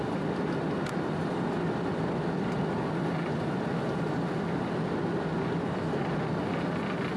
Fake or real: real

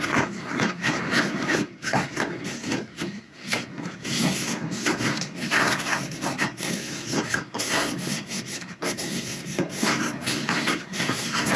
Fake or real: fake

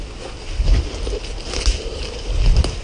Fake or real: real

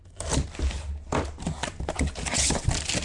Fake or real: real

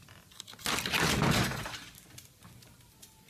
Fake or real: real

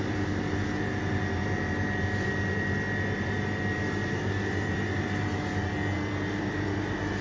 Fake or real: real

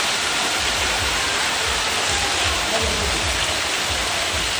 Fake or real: real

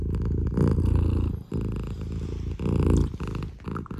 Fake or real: real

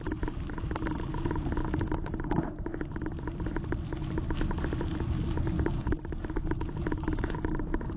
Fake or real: real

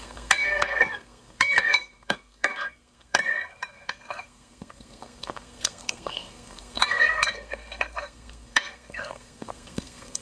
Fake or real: fake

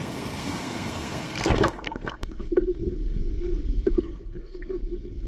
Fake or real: fake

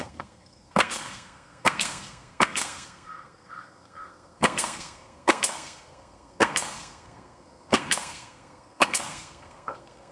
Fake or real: fake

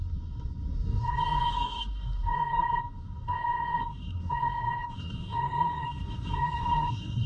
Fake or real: fake